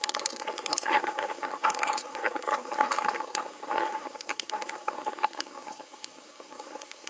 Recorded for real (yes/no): no